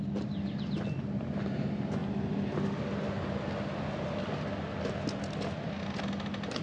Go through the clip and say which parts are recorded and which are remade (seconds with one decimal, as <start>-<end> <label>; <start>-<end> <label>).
0.0-6.6 recorded